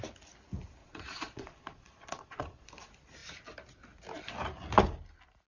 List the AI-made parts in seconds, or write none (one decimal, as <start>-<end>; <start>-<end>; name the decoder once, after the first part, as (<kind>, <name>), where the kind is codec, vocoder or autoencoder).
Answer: 0.8-2.7 (vocoder, Vocos)